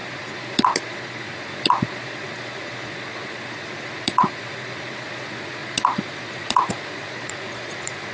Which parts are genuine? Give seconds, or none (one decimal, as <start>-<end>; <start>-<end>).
none

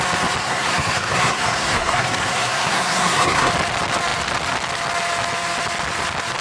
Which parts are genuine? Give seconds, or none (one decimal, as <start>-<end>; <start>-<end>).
0.0-0.4; 3.5-6.4